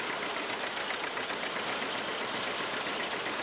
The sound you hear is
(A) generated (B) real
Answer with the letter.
B